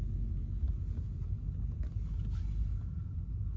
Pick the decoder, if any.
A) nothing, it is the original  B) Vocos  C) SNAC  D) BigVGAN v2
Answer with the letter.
A